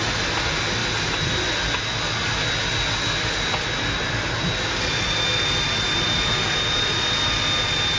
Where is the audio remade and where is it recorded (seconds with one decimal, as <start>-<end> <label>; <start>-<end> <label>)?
0.0-8.0 recorded